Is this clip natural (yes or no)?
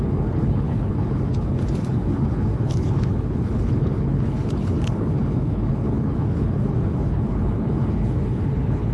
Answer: no